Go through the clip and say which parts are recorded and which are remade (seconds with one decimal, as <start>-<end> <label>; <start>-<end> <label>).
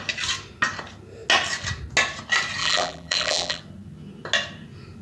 0.0-2.6 recorded; 2.6-3.6 remade; 3.6-5.0 recorded